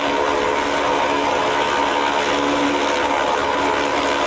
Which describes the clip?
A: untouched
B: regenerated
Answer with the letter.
A